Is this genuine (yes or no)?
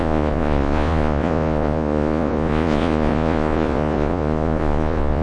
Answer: no